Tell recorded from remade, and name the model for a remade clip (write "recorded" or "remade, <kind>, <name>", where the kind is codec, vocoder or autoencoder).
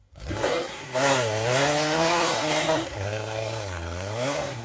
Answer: remade, codec, SNAC